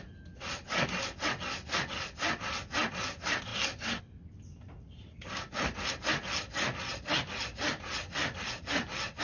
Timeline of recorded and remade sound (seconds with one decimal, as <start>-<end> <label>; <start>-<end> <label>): 0.0-9.2 recorded